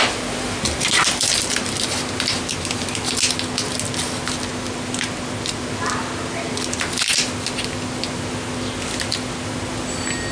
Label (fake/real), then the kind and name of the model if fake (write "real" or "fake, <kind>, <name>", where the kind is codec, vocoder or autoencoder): real